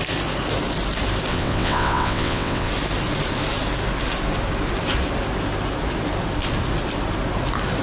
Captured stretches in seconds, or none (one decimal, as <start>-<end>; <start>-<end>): 0.0-1.3; 2.7-7.8